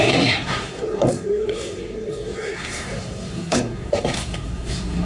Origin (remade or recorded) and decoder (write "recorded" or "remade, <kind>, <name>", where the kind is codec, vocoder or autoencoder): remade, codec, SNAC